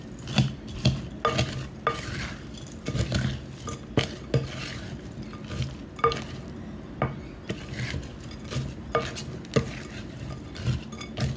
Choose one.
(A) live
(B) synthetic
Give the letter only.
A